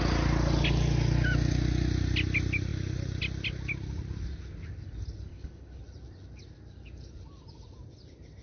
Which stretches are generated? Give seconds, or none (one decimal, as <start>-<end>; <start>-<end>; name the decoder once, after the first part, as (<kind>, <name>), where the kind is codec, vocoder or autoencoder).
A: 5.3-5.8 (codec, HILCodec)